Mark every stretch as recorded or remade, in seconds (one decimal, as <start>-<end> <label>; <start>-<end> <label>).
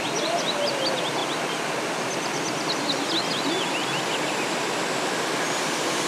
0.0-6.1 recorded